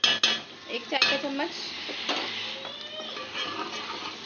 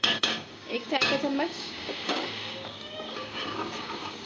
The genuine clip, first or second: first